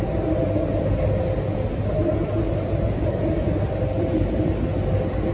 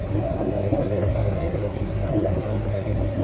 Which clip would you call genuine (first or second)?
first